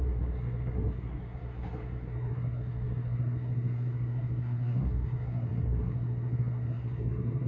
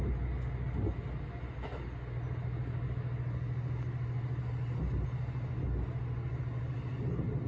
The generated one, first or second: first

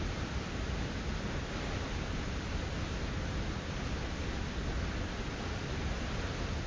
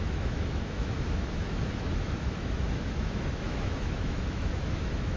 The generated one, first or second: second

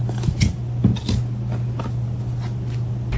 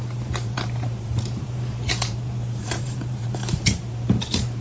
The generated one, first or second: second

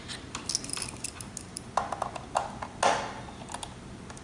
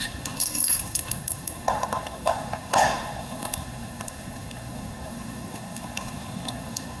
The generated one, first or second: second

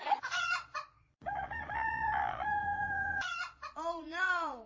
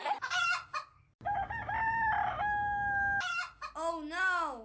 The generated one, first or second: first